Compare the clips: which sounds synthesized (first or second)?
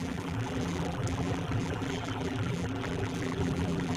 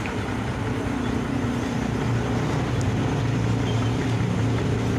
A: first